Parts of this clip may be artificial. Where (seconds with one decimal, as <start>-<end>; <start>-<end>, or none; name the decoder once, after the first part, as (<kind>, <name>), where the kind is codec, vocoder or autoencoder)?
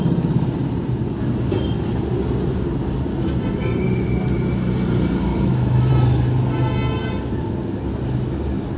5.3-5.9 (autoencoder, DAC-VAE)